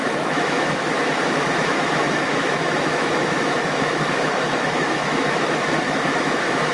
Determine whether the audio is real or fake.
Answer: fake